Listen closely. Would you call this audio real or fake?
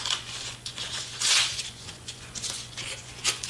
fake